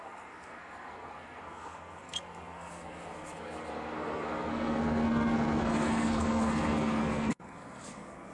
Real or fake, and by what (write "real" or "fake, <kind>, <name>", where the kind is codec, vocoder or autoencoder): fake, codec, SNAC